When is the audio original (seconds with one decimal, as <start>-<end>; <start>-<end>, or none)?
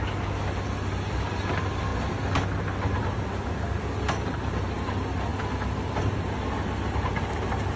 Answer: 0.0-7.8